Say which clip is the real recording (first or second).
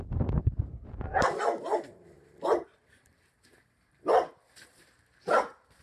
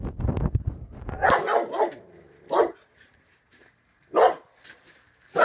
second